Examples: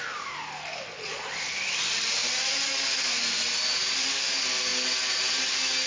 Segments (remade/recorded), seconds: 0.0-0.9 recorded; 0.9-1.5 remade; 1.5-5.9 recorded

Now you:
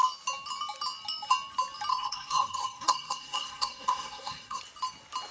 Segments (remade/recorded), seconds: 0.0-1.9 recorded; 1.9-4.6 remade; 4.6-5.3 recorded

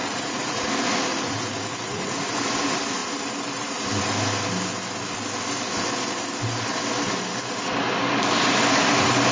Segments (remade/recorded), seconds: 0.0-0.7 remade; 0.7-1.1 recorded; 1.1-2.4 remade; 2.4-9.3 recorded

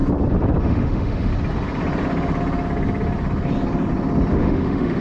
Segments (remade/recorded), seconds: 0.0-0.6 recorded; 0.6-1.3 remade; 1.3-4.3 recorded; 4.3-5.0 remade

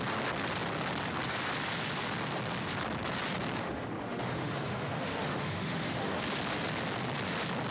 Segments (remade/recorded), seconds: 0.0-3.6 recorded; 3.6-6.2 remade; 6.2-7.7 recorded

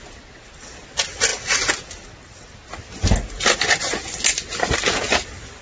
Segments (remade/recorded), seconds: 0.0-5.6 recorded